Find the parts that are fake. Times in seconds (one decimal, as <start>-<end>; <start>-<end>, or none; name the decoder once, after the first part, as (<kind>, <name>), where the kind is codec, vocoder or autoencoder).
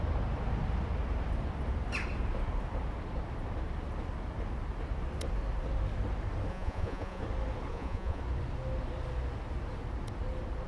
6.5-7.2 (vocoder, Vocos); 7.7-8.2